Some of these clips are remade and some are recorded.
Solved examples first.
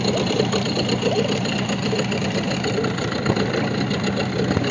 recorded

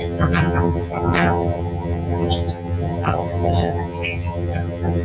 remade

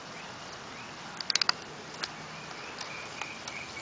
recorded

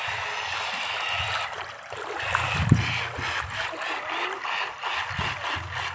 recorded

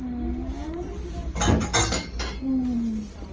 recorded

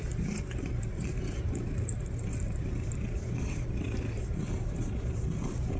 recorded